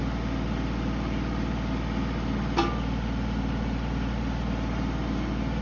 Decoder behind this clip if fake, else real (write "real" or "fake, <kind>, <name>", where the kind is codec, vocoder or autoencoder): real